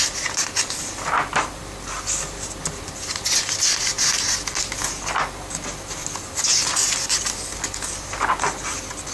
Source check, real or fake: real